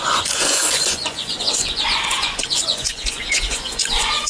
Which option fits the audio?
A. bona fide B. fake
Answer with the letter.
B